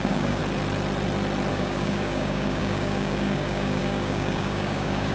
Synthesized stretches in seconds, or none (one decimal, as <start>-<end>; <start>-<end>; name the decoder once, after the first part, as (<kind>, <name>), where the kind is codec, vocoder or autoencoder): 0.0-0.4 (codec, DAC); 1.5-5.1